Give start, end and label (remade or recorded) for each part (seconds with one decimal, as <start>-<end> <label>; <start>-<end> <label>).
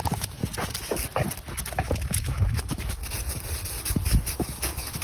0.0-0.4 remade; 0.4-1.7 recorded; 1.7-3.0 remade; 3.0-4.3 recorded; 4.3-5.0 remade